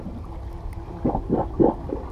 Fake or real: real